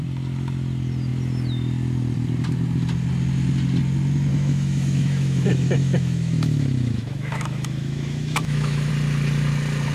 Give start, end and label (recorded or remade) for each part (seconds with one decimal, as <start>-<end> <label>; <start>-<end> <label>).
0.0-4.3 recorded; 4.3-8.9 remade; 8.9-9.9 recorded